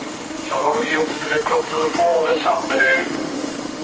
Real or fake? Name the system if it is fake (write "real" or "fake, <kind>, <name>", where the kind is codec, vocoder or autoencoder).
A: fake, autoencoder, DAC-VAE